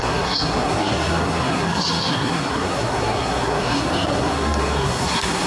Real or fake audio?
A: fake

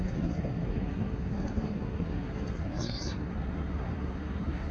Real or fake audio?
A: fake